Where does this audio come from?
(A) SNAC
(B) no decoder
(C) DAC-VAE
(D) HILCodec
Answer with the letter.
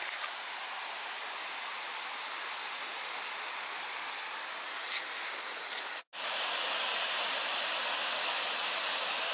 B